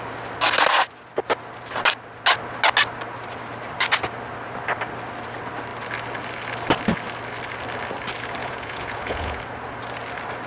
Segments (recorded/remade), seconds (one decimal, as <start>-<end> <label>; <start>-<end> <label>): 0.0-8.4 recorded; 8.4-9.4 remade; 9.4-10.5 recorded